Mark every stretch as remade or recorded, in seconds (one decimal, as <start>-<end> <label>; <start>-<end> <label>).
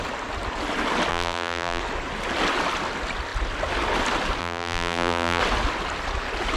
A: 0.0-1.1 recorded; 1.1-1.8 remade; 1.8-4.4 recorded; 4.4-5.4 remade; 5.4-6.6 recorded